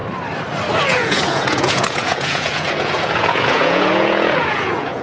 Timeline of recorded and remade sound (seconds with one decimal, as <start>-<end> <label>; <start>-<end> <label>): 0.0-0.8 recorded; 0.8-5.0 remade